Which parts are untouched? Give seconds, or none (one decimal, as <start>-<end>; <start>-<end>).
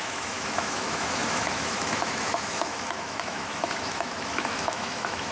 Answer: none